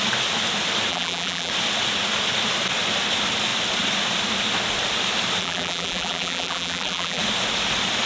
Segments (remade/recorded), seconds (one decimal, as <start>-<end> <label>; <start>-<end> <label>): 0.0-0.9 recorded; 0.9-1.5 remade; 1.5-5.4 recorded; 5.4-7.2 remade; 7.2-8.1 recorded